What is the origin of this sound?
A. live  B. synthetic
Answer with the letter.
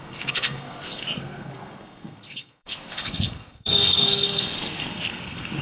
B